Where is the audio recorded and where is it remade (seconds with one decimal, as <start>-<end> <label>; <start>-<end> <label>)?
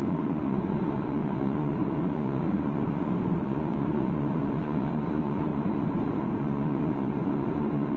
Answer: 0.0-8.0 remade